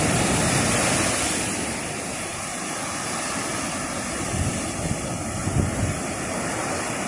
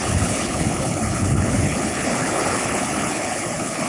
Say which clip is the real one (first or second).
first